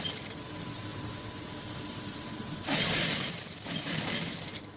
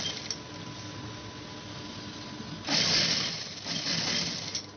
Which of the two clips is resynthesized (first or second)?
first